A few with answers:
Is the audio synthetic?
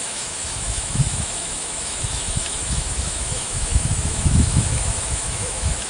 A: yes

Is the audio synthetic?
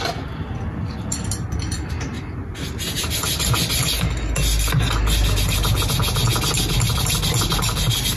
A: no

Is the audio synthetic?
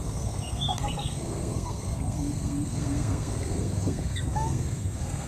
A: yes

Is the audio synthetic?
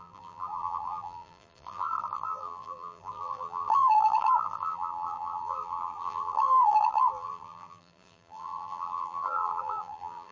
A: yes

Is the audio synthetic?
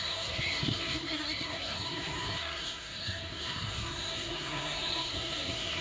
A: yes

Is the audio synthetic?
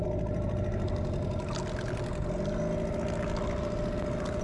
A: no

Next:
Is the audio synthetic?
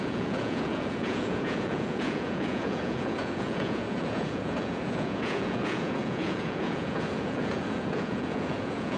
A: yes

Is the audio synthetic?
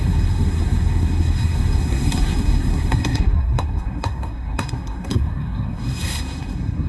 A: yes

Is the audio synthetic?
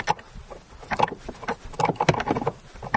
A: no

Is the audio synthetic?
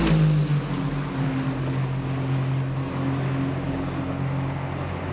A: no